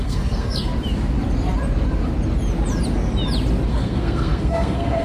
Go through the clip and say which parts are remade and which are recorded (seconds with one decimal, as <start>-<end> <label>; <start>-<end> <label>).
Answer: 0.0-0.7 remade; 0.7-3.7 recorded; 3.7-5.0 remade